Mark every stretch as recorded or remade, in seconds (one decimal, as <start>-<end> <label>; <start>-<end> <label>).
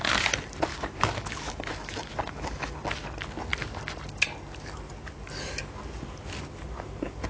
0.0-0.7 recorded; 0.7-2.7 remade; 2.7-7.3 recorded